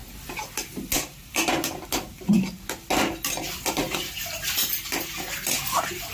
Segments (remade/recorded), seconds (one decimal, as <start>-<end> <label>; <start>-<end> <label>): 0.0-6.1 recorded